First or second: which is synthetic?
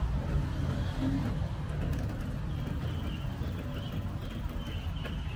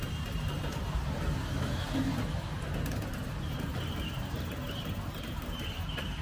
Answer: second